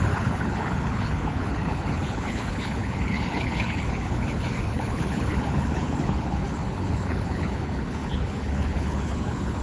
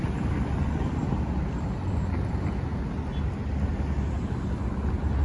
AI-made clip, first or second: first